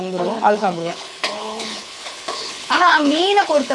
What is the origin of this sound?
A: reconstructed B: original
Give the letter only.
A